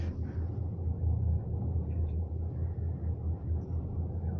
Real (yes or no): yes